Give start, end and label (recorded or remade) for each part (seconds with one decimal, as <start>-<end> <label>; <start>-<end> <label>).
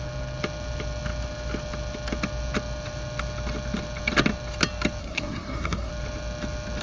0.0-5.0 recorded; 5.0-5.9 remade; 5.9-6.8 recorded